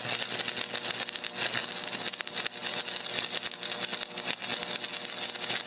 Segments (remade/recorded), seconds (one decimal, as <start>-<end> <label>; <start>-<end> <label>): 0.0-5.7 recorded